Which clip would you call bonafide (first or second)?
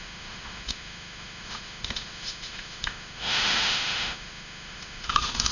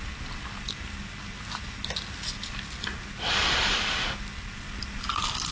second